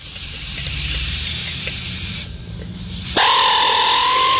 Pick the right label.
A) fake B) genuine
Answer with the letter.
A